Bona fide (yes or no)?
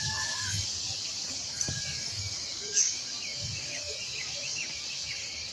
no